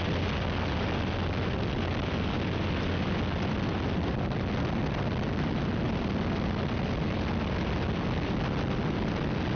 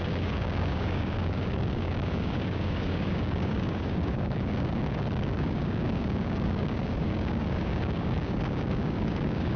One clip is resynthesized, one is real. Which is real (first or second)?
first